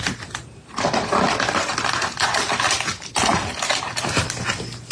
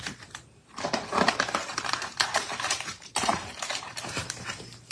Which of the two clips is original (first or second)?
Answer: first